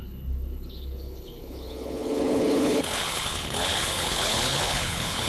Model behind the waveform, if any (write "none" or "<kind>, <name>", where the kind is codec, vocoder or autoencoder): codec, HILCodec